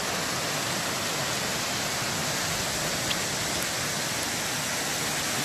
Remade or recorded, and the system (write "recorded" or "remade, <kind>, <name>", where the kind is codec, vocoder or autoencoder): recorded